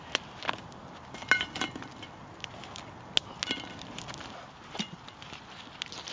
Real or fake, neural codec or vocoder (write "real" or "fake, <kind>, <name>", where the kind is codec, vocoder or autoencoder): real